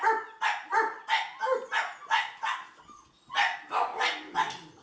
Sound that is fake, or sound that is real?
real